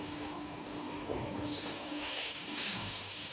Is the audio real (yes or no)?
no